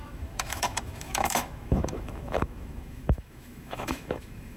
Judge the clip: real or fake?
fake